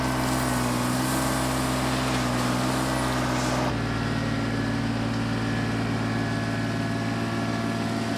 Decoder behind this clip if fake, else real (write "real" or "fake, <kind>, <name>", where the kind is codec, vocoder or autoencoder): real